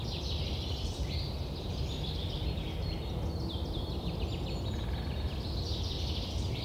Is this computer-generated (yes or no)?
no